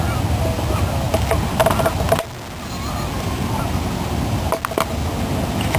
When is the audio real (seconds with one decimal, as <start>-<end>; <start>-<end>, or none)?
1.6-5.1